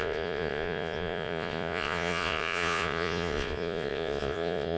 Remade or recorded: remade